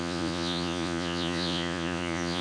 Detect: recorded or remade remade